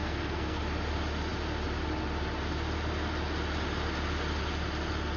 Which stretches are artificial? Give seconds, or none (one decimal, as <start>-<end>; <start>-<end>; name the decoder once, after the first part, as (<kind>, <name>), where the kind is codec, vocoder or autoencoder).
0.0-0.6 (codec, SNAC)

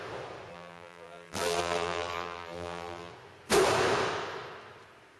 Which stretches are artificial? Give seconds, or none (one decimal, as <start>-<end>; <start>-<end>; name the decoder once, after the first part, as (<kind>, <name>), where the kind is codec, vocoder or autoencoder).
0.5-3.1 (vocoder, BigVGAN v2)

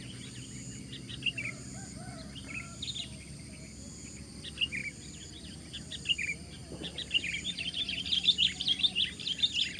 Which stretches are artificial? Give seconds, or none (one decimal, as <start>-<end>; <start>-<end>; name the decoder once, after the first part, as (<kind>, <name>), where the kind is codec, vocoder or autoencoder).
1.1-2.9 (vocoder, BigVGAN v2); 4.8-5.4; 6.6-7.9

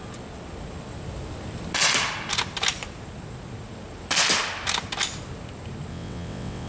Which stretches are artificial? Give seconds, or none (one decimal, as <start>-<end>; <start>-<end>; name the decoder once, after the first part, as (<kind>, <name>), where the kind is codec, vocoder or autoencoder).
5.9-6.7 (vocoder, WaveNeXt)

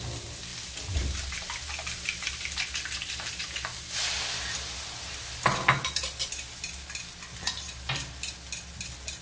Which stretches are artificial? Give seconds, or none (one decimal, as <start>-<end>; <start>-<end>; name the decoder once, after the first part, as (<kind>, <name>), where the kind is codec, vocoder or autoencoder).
none

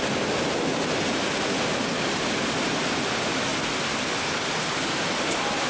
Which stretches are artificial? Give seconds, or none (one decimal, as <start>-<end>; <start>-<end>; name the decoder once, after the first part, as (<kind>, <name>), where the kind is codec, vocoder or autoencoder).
1.7-2.7 (vocoder, BigVGAN v2)

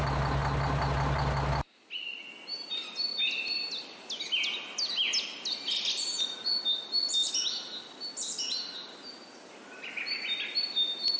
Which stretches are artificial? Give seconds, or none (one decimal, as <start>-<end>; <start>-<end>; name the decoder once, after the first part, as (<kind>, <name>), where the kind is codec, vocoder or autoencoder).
none

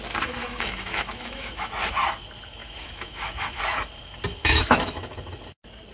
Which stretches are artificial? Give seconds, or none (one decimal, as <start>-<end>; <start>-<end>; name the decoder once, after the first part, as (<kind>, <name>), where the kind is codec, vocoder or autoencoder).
0.4-1.7 (autoencoder, DAC-VAE); 2.6-3.6; 4.4-5.1